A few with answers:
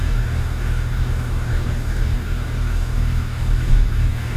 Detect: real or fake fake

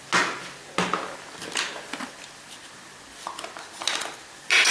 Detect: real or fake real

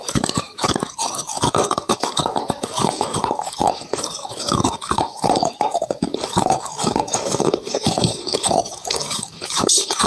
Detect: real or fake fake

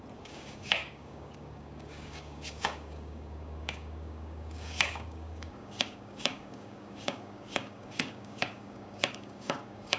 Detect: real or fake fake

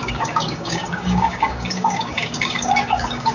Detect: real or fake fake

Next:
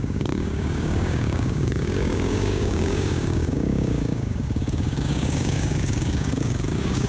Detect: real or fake fake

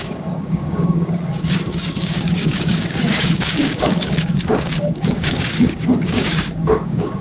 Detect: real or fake fake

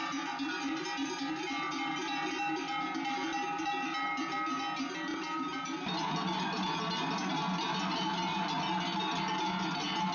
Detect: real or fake real